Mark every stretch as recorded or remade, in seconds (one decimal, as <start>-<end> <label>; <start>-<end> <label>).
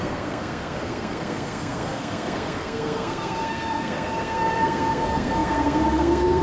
0.0-6.4 remade